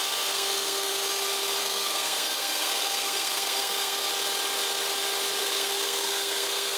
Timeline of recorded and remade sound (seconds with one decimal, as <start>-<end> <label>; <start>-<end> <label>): 0.0-0.9 remade; 0.9-1.6 recorded; 1.6-4.1 remade; 4.1-5.4 recorded; 5.4-6.8 remade